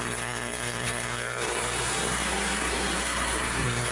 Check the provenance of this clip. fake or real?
fake